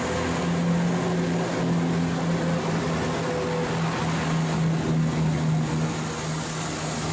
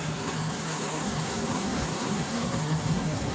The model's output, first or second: second